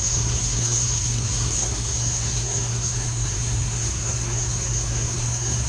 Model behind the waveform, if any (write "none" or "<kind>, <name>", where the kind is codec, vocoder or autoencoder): codec, SNAC